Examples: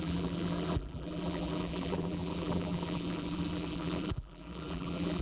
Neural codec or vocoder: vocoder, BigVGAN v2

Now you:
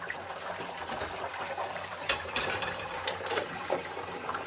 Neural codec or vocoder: vocoder, BigVGAN v2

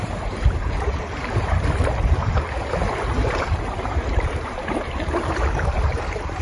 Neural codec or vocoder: vocoder, BigVGAN v2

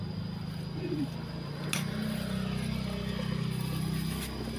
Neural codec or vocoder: none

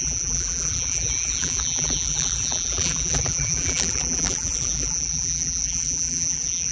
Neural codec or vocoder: vocoder, BigVGAN v2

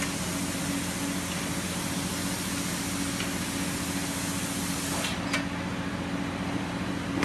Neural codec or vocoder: none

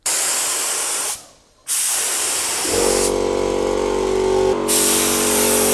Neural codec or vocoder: vocoder, BigVGAN v2